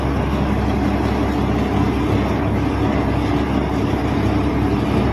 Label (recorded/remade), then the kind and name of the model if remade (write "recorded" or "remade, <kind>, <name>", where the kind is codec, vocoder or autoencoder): recorded